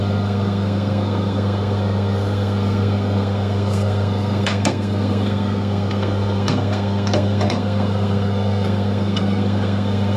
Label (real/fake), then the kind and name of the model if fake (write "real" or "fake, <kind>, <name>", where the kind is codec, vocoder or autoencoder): fake, codec, SNAC